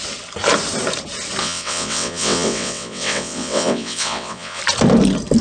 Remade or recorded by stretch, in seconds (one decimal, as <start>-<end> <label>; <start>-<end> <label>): 0.0-1.4 recorded; 1.4-4.6 remade; 4.6-5.4 recorded